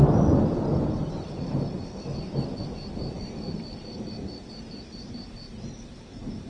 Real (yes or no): yes